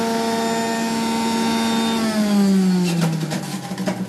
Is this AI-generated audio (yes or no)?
no